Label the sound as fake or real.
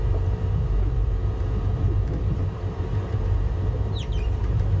fake